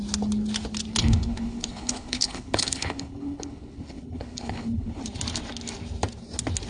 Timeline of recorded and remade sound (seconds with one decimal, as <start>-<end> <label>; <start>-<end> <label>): 0.0-1.0 recorded; 1.0-5.0 remade; 5.0-6.7 recorded